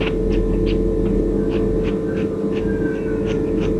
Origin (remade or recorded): recorded